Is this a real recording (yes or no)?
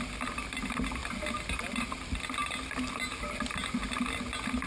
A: yes